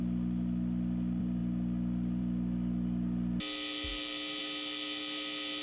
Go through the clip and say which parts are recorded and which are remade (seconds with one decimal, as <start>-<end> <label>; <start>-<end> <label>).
0.0-5.6 recorded